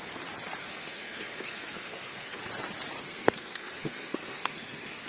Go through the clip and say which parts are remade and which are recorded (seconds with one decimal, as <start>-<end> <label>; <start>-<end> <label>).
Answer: 0.0-0.6 recorded; 0.6-2.4 remade; 2.4-3.0 recorded; 3.0-5.1 remade